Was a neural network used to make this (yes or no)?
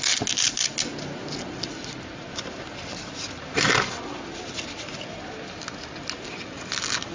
no